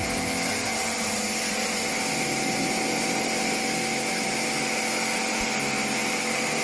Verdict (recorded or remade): recorded